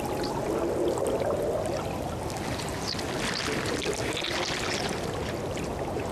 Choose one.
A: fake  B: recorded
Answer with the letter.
B